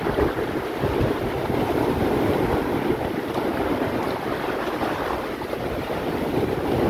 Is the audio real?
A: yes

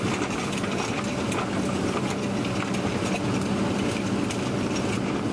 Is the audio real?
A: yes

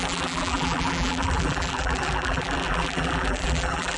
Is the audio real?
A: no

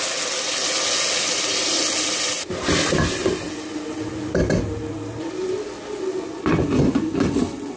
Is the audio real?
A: yes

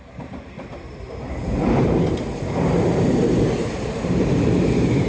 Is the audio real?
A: no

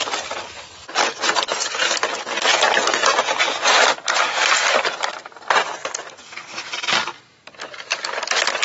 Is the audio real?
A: yes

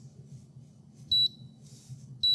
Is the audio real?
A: yes